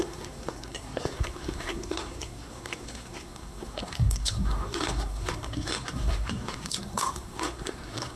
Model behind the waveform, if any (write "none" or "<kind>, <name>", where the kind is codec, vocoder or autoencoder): codec, SNAC